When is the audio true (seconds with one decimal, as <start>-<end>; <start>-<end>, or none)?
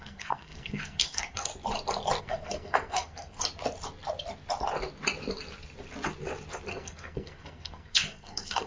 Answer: 1.5-2.2; 3.4-6.7